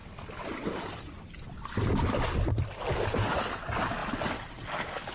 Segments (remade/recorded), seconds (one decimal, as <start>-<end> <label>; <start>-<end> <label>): 0.0-5.1 recorded